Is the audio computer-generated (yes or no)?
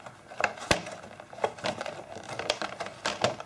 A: no